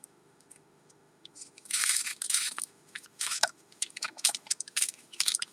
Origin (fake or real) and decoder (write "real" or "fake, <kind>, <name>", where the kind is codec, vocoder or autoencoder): fake, autoencoder, DAC-VAE